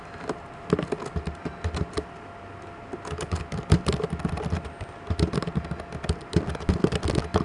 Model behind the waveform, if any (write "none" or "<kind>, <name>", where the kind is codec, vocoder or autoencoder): none